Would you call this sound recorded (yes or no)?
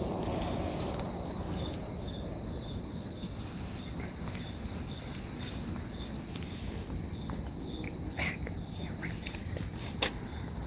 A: yes